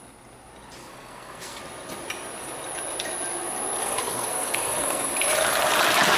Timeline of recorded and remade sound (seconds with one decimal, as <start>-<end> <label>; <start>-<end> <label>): 0.0-0.8 recorded; 0.8-1.6 remade; 1.6-3.8 recorded; 3.8-5.1 remade; 5.1-6.2 recorded